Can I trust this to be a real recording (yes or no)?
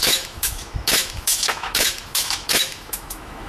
no